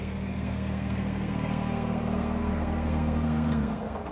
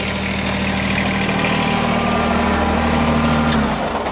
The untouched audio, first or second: second